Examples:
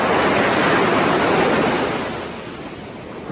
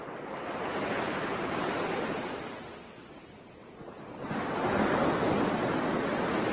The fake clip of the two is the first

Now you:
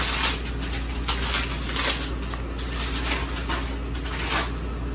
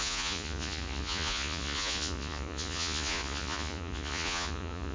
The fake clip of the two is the second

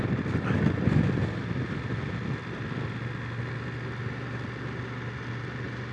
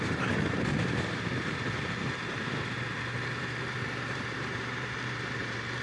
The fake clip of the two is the second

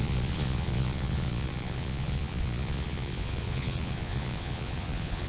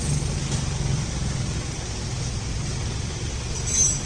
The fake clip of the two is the first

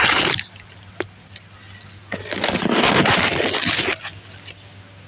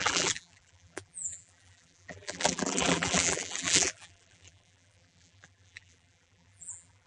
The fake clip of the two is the second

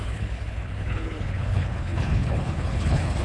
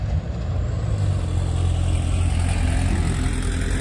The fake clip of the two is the first